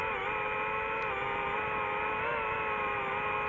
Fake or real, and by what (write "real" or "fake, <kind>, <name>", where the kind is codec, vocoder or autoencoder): real